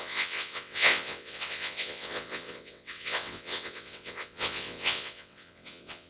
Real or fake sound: fake